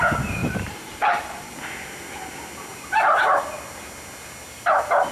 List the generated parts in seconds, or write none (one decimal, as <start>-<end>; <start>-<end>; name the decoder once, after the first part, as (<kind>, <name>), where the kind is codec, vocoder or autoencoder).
0.4-1.5 (vocoder, BigVGAN v2)